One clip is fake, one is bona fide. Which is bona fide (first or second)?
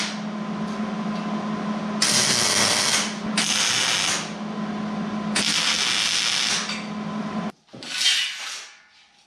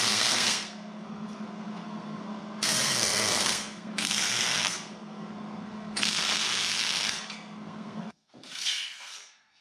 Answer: first